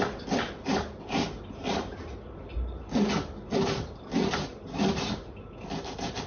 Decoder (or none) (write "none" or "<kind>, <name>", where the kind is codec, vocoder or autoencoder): none